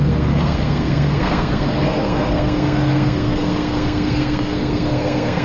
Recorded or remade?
remade